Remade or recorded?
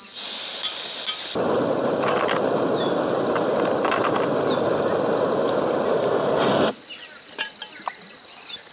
recorded